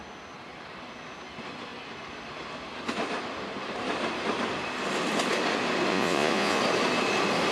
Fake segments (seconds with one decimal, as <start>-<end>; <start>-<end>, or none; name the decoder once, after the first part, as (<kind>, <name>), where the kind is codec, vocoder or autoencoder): 5.9-6.6 (vocoder, Vocos)